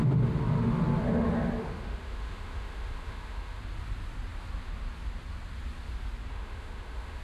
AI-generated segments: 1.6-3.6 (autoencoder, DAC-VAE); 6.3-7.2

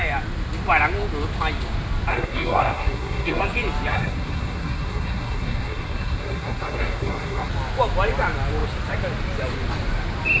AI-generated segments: 2.1-3.4 (codec, SNAC); 3.9-7.5

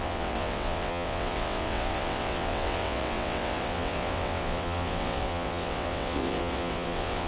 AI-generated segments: 0.0-7.3 (vocoder, WaveNeXt)

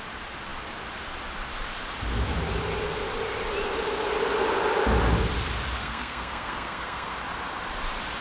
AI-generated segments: 5.8-7.1 (codec, SNAC)